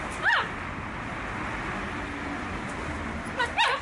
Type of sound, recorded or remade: recorded